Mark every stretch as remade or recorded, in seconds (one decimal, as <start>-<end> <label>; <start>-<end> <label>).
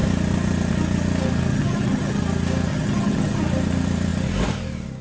0.0-1.5 recorded; 1.5-2.2 remade; 2.2-2.7 recorded; 2.7-3.4 remade; 3.4-5.0 recorded